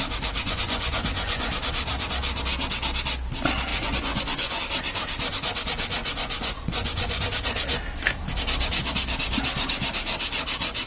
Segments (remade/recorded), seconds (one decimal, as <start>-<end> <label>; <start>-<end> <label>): 0.0-0.4 recorded; 0.4-1.5 remade; 1.5-3.7 recorded; 3.7-4.6 remade; 4.6-6.0 recorded; 6.0-7.2 remade; 7.2-10.9 recorded